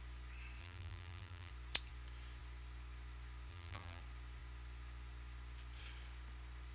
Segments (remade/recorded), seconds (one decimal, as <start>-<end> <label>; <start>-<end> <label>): 0.0-0.6 recorded; 0.6-1.5 remade; 1.5-3.5 recorded; 3.5-4.0 remade; 4.0-6.7 recorded